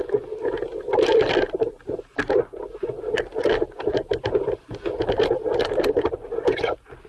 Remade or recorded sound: recorded